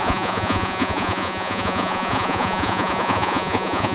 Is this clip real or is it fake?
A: fake